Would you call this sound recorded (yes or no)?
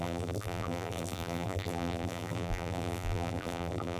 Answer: no